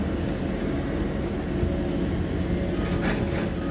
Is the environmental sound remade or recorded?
recorded